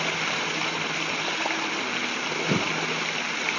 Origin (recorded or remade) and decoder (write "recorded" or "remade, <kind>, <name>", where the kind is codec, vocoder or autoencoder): recorded